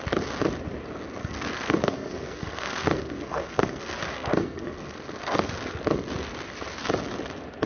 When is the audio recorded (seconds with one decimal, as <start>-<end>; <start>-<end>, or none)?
0.0-1.2; 5.8-7.7